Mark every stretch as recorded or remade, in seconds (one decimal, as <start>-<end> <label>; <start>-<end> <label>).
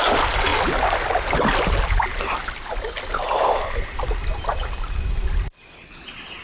0.0-6.4 recorded